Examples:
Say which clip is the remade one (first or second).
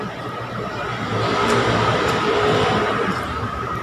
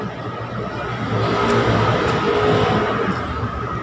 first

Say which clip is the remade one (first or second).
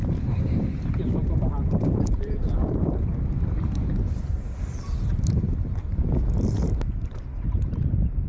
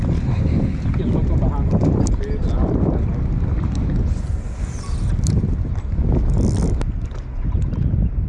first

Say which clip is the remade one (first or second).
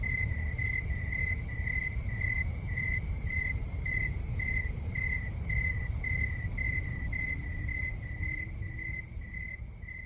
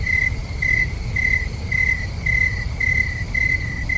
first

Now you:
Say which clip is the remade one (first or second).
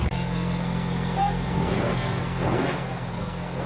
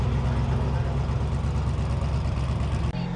first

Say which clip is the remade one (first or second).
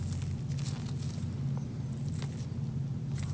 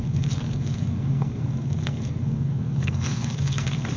second